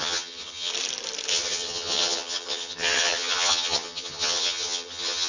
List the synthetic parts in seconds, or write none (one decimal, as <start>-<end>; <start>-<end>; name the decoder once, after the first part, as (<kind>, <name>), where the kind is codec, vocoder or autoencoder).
0.0-0.7 (vocoder, HiFi-GAN); 1.3-5.3